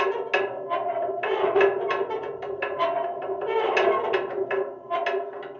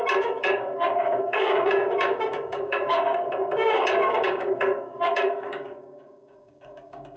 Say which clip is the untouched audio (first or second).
first